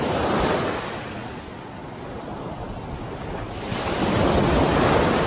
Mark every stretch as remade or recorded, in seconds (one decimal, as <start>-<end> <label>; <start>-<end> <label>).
0.0-5.3 recorded